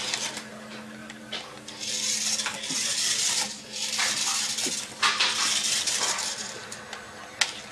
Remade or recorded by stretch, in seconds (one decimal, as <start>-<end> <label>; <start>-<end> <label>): 0.0-1.0 recorded; 1.0-1.6 remade; 1.6-2.5 recorded; 2.5-6.2 remade; 6.2-7.7 recorded